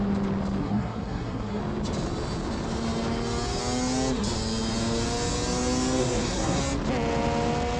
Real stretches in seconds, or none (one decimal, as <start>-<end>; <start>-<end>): 0.0-0.6; 1.6-6.0; 6.6-7.8